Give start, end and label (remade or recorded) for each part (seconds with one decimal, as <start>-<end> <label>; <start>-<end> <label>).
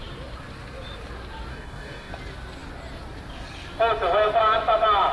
0.0-1.5 recorded; 1.5-2.1 remade; 2.1-5.1 recorded